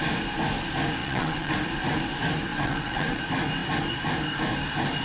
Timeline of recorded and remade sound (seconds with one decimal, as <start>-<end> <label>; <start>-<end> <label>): 0.0-1.0 recorded; 1.0-1.5 remade; 1.5-2.5 recorded; 2.5-3.2 remade; 3.2-5.0 recorded